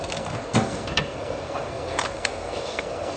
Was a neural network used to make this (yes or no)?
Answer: yes